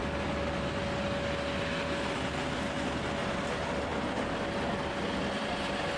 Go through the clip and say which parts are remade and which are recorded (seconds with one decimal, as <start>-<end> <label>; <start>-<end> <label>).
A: 0.0-6.0 recorded